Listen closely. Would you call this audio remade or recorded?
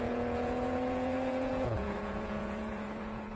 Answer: remade